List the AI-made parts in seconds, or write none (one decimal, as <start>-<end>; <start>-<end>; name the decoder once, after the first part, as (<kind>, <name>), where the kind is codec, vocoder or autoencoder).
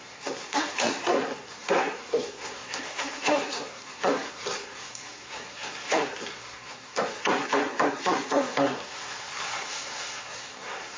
0.0-11.0 (codec, SNAC)